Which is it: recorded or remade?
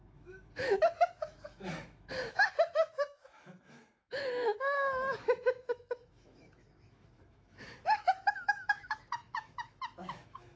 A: remade